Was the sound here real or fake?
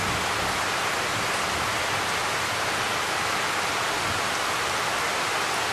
real